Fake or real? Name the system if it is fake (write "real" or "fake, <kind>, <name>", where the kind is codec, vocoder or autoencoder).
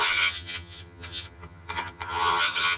fake, vocoder, HiFi-GAN